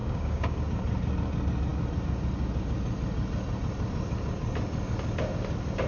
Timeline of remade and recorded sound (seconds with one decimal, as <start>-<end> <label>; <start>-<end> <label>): 0.0-0.6 remade; 0.6-5.9 recorded